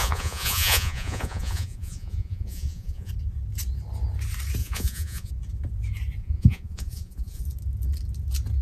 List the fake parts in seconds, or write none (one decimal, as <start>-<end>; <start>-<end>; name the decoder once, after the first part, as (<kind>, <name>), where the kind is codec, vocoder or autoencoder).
0.0-3.1 (vocoder, Vocos); 4.6-5.3; 6.2-7.4